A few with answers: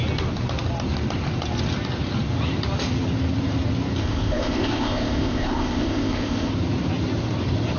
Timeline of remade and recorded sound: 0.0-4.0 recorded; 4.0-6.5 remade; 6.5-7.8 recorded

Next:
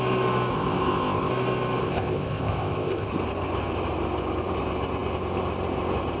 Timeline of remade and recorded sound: 0.0-0.5 recorded; 0.5-1.3 remade; 1.3-1.8 recorded; 1.8-3.1 remade; 3.1-6.2 recorded

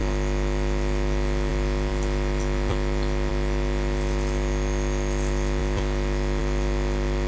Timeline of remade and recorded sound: 0.0-7.3 recorded

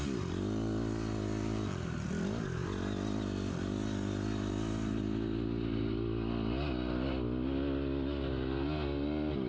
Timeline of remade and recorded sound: 0.0-9.5 recorded

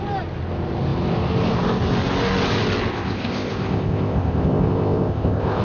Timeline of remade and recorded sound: 0.0-2.9 recorded; 2.9-5.6 remade

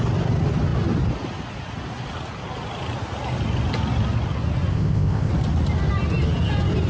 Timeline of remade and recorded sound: 0.0-4.7 recorded; 4.7-5.3 remade; 5.3-6.9 recorded